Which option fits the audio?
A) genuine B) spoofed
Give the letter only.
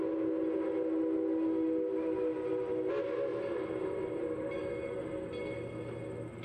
A